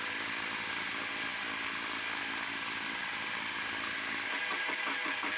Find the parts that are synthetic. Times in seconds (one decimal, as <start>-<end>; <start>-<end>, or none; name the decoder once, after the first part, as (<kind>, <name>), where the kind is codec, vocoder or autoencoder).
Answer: none